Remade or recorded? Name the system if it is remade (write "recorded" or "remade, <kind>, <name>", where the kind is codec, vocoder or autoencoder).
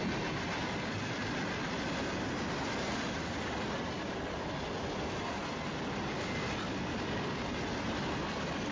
recorded